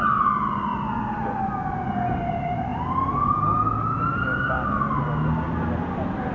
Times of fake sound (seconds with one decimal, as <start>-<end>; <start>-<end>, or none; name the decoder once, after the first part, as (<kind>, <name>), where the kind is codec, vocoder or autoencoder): none